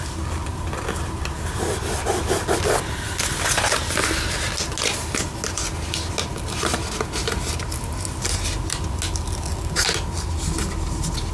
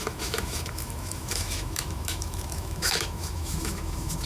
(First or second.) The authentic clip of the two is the first